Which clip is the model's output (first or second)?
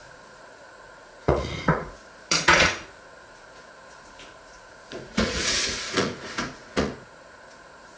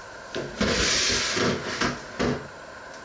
first